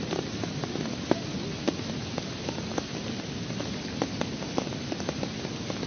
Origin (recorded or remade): recorded